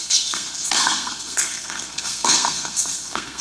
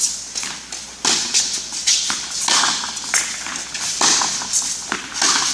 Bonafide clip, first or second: second